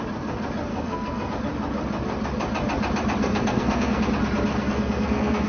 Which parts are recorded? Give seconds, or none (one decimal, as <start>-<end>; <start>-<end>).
0.0-0.7; 1.3-3.2; 4.0-4.5